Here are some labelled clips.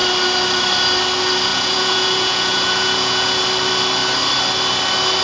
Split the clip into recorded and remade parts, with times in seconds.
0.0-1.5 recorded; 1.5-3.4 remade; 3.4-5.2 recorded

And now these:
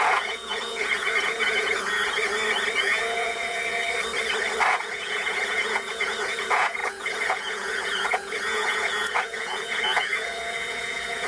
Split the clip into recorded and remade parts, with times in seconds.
0.0-2.2 remade; 2.2-2.8 recorded; 2.8-3.8 remade; 3.8-4.7 recorded; 4.7-11.3 remade

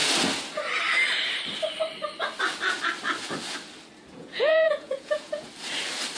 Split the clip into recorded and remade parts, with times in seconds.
0.0-4.2 recorded; 4.2-5.5 remade; 5.5-6.2 recorded

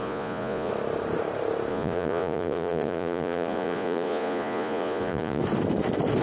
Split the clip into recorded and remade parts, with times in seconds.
0.0-0.7 remade; 0.7-1.7 recorded; 1.7-5.4 remade; 5.4-6.2 recorded

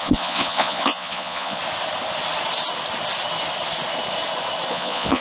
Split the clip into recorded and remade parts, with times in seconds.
0.0-1.6 remade; 1.6-4.7 recorded; 4.7-5.2 remade

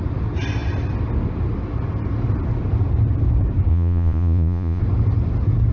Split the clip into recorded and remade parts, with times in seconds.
0.0-3.7 recorded; 3.7-4.8 remade; 4.8-5.7 recorded

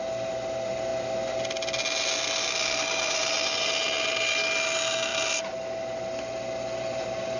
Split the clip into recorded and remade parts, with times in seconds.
0.0-7.4 recorded

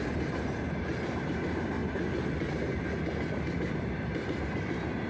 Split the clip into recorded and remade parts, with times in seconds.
0.0-5.1 recorded